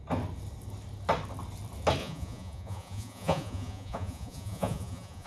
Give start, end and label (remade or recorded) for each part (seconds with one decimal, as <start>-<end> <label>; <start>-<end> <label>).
0.0-2.0 recorded; 2.0-5.3 remade